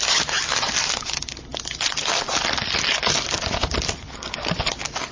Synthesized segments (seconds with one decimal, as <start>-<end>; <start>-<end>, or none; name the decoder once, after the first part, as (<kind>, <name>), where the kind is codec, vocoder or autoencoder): none

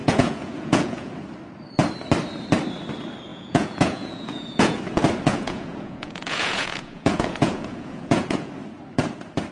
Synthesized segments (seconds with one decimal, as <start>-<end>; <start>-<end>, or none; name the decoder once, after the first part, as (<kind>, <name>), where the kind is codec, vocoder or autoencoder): 0.0-1.1 (vocoder, Vocos); 3.3-4.8; 5.3-8.5